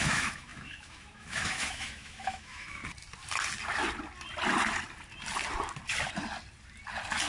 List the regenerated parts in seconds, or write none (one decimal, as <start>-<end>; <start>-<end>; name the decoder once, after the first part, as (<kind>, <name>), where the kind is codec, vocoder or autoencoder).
0.0-2.8 (autoencoder, DAC-VAE)